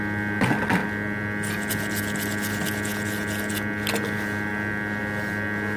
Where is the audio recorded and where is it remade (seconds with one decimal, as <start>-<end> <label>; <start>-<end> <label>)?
0.0-5.8 recorded